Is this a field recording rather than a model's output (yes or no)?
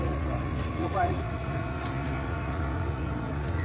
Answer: no